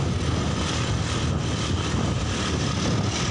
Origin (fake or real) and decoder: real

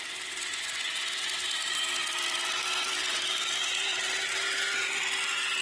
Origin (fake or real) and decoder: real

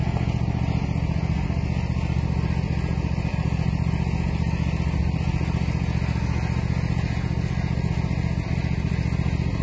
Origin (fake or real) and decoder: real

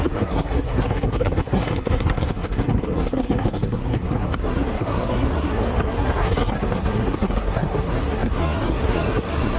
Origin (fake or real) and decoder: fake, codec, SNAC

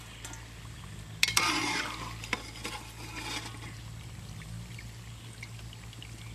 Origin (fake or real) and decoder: real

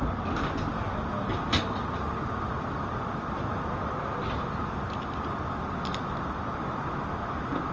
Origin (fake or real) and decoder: real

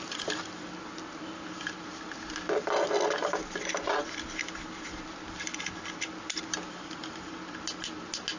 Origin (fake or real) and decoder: real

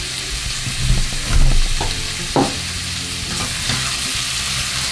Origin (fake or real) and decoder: real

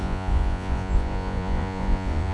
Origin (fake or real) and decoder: fake, vocoder, Vocos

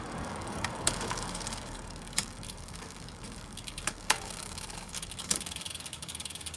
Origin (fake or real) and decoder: fake, codec, DAC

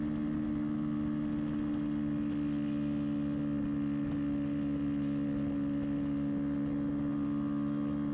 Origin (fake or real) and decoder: real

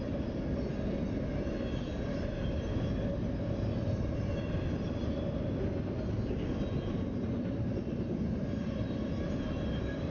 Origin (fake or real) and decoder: real